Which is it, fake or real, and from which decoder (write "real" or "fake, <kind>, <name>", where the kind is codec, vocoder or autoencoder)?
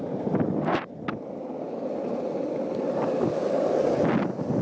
real